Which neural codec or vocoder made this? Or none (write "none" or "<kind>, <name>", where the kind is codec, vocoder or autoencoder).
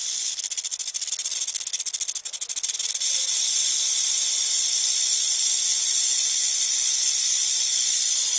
none